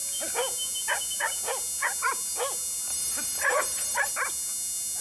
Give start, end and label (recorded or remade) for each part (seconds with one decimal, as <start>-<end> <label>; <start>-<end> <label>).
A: 0.0-2.9 recorded; 2.9-4.1 remade; 4.1-5.0 recorded

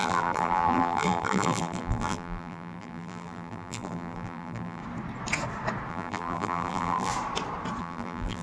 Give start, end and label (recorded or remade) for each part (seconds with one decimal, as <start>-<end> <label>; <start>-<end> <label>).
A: 0.0-4.8 remade; 4.8-5.9 recorded; 5.9-7.1 remade; 7.1-7.8 recorded; 7.8-8.4 remade

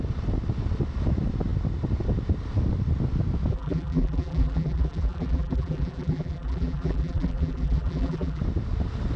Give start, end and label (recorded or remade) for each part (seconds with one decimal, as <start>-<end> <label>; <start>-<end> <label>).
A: 0.0-3.5 recorded; 3.5-8.4 remade; 8.4-9.2 recorded

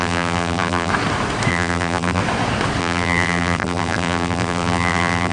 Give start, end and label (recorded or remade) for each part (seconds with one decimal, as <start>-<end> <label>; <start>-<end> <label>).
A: 0.0-0.9 remade; 0.9-1.5 recorded; 1.5-2.2 remade; 2.2-2.8 recorded; 2.8-5.3 remade